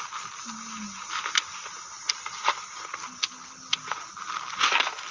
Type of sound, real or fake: real